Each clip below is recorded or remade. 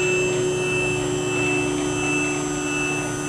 recorded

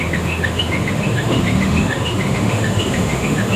remade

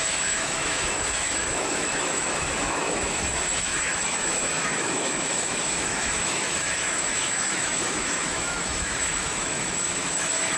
remade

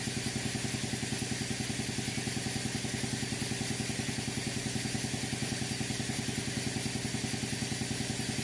recorded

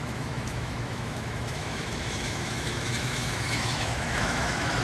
remade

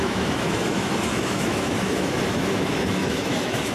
remade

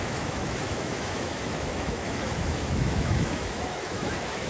remade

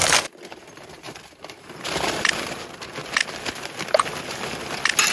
recorded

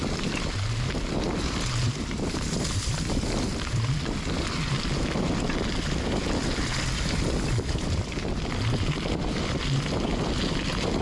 recorded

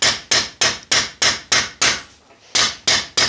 recorded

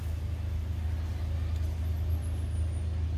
recorded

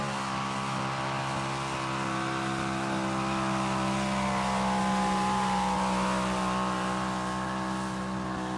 recorded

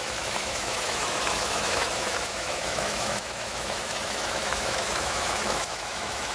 remade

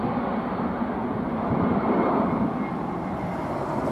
recorded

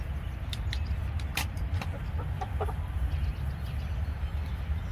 recorded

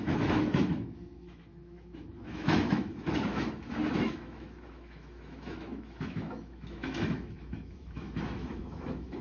remade